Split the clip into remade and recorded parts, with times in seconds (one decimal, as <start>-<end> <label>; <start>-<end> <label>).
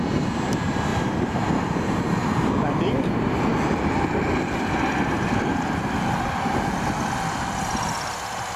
0.0-0.9 recorded; 0.9-2.5 remade; 2.5-8.6 recorded